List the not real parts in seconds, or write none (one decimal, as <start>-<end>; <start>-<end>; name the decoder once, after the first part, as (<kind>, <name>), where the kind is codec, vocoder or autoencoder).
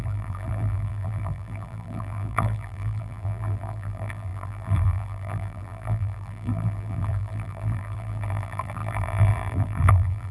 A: 0.0-10.3 (vocoder, BigVGAN v2)